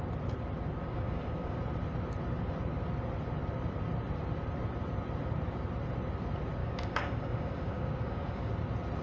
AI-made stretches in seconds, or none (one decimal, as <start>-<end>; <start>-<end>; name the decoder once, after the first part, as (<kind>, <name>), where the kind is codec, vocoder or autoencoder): 0.8-1.6 (codec, DAC); 6.6-8.5